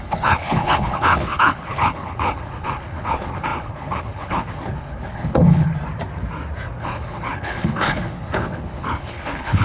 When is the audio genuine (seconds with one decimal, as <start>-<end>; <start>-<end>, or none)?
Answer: 5.7-6.8